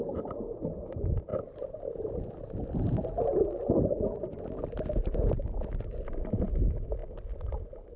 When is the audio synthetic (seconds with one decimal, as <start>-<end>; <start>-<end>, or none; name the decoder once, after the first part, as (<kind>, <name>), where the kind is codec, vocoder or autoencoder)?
none